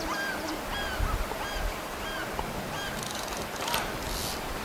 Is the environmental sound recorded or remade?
recorded